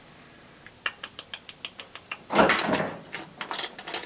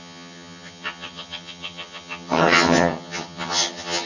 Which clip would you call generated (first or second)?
second